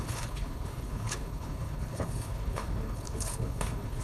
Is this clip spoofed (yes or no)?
yes